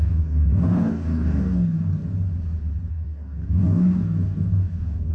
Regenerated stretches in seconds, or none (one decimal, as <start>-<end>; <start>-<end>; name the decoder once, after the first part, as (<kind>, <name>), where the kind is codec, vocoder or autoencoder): 0.0-2.0 (codec, DAC); 2.9-5.1